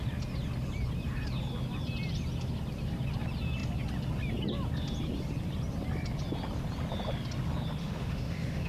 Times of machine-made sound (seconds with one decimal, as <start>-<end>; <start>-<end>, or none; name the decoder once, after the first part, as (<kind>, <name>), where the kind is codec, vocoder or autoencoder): 7.8-8.7 (autoencoder, DAC-VAE)